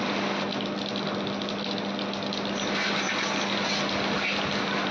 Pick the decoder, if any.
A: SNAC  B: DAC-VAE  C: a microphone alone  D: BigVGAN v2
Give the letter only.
C